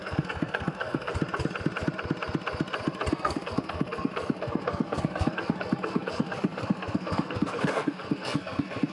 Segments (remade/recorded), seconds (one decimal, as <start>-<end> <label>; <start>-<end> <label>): 0.0-1.1 remade; 1.1-3.1 recorded; 3.1-8.9 remade